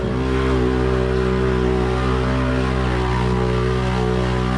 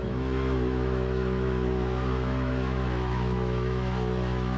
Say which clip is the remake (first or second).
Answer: second